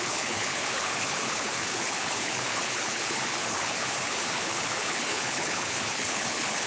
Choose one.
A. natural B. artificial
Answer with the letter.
B